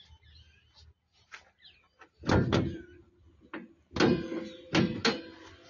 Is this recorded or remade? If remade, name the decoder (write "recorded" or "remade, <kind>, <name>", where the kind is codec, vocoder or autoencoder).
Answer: recorded